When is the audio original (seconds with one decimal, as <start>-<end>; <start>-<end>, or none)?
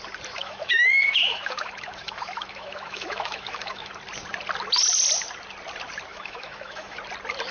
0.0-0.4; 3.9-6.1; 7.0-7.5